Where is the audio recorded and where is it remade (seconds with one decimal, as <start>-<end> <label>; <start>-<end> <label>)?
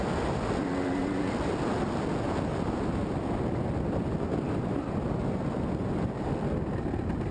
0.0-7.3 recorded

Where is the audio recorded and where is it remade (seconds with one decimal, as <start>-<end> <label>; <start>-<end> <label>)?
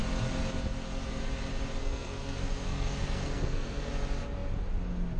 0.0-1.8 recorded; 1.8-3.9 remade; 3.9-5.2 recorded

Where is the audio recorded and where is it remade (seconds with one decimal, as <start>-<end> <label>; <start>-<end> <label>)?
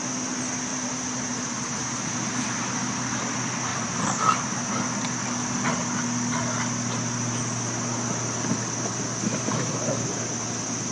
0.0-0.7 recorded; 0.7-2.6 remade; 2.6-3.7 recorded; 3.7-4.7 remade; 4.7-10.9 recorded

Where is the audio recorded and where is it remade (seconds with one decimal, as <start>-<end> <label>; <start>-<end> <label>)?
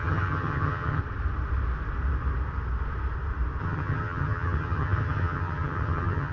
0.0-1.0 remade; 1.0-3.6 recorded; 3.6-6.3 remade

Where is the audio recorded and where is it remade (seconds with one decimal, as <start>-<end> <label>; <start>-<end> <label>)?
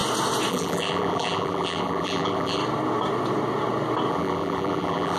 0.0-0.5 recorded; 0.5-2.6 remade; 2.6-4.1 recorded; 4.1-5.2 remade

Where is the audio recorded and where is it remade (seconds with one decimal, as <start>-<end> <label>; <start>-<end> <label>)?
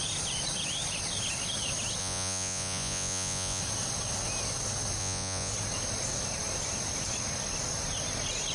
0.0-2.0 recorded; 2.0-3.6 remade; 3.6-5.0 recorded; 5.0-5.5 remade; 5.5-8.5 recorded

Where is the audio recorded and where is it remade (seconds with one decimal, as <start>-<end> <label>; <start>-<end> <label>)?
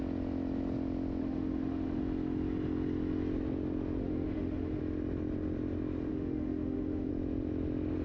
0.0-1.2 recorded; 1.2-2.0 remade; 2.0-4.0 recorded; 4.0-4.8 remade; 4.8-6.1 recorded; 6.1-7.1 remade; 7.1-8.0 recorded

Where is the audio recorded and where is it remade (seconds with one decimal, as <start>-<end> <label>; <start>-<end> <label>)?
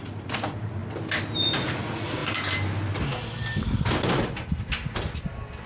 0.0-0.8 remade; 0.8-1.4 recorded; 1.4-2.2 remade; 2.2-5.7 recorded